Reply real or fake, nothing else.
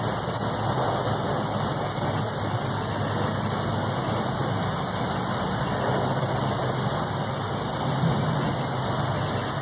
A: real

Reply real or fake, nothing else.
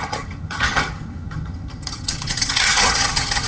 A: fake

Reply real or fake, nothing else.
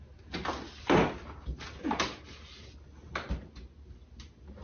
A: real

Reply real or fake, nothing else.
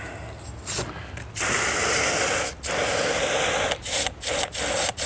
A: real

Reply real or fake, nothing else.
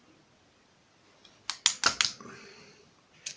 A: real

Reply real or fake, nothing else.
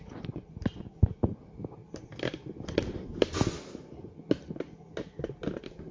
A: real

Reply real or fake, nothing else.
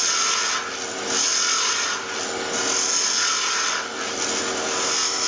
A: real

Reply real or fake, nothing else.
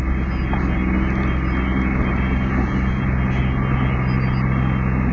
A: real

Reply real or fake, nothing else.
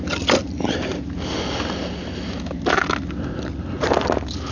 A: real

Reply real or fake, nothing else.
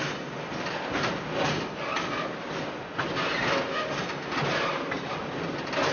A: real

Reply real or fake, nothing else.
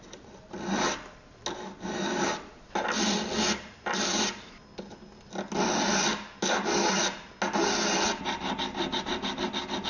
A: real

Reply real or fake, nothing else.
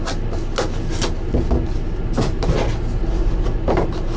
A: real